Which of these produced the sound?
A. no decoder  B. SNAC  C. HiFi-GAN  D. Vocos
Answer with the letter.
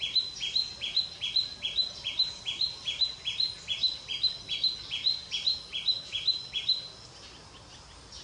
A